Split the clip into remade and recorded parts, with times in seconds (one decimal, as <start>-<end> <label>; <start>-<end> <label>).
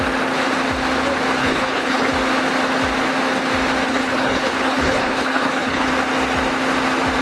0.0-1.4 recorded; 1.4-2.1 remade; 2.1-3.9 recorded; 3.9-5.9 remade; 5.9-7.2 recorded